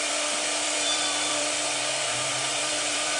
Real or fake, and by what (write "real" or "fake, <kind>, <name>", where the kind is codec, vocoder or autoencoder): fake, vocoder, BigVGAN v2